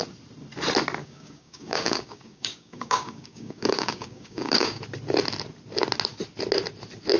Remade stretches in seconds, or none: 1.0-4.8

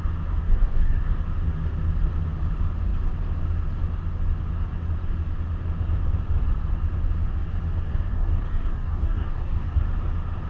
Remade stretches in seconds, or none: 0.4-1.0; 8.1-9.8